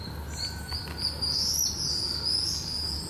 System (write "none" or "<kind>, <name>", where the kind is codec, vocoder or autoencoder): none